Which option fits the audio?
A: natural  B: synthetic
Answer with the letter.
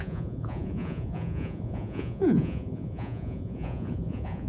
B